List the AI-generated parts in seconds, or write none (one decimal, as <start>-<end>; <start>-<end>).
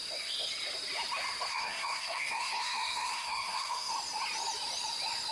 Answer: 1.5-3.9